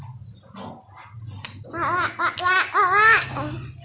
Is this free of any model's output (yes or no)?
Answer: yes